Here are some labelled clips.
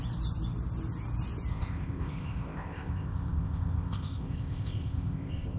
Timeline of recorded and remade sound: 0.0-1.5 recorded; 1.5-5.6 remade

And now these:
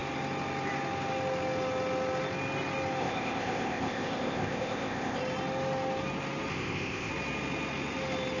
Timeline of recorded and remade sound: 0.0-3.0 recorded; 3.0-5.2 remade; 5.2-6.5 recorded; 6.5-7.1 remade; 7.1-8.4 recorded

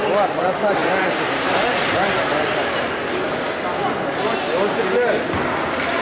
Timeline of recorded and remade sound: 0.0-6.0 recorded

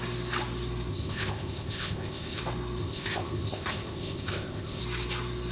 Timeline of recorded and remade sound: 0.0-0.9 recorded; 0.9-2.4 remade; 2.4-2.8 recorded; 2.8-4.8 remade; 4.8-5.5 recorded

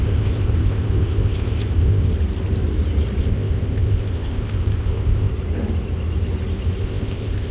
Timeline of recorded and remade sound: 0.0-2.1 remade; 2.1-3.2 recorded; 3.2-5.3 remade; 5.3-6.8 recorded; 6.8-7.5 remade

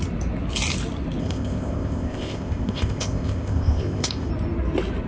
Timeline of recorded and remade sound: 0.0-1.2 recorded; 1.2-4.3 remade; 4.3-5.1 recorded

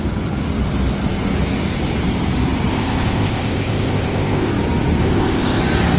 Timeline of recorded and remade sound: 0.0-2.7 recorded; 2.7-4.5 remade; 4.5-5.0 recorded; 5.0-5.6 remade; 5.6-6.0 recorded

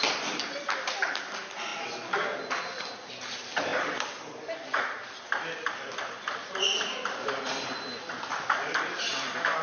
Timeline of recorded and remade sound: 0.0-9.6 recorded